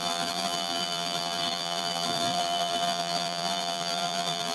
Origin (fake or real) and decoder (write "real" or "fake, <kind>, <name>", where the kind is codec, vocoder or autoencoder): fake, vocoder, BigVGAN v2